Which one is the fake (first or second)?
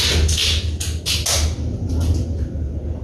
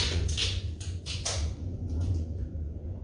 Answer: second